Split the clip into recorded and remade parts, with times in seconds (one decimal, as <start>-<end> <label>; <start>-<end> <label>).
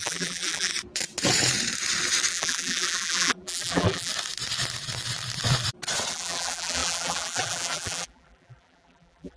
0.0-0.7 remade; 0.7-2.3 recorded; 2.3-4.1 remade; 4.1-6.1 recorded; 6.1-9.4 remade